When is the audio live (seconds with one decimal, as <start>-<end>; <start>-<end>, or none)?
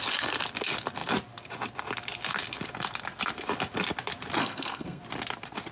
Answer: 0.0-4.4; 5.0-5.7